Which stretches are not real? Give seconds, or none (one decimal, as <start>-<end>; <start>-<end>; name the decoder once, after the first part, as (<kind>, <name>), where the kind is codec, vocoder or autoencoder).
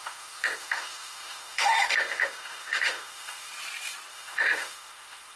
0.0-3.5 (autoencoder, DAC-VAE); 4.1-5.4